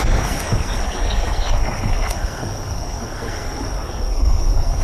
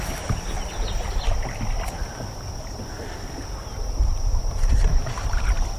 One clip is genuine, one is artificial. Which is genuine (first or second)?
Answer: second